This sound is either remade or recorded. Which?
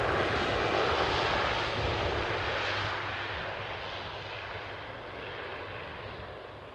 recorded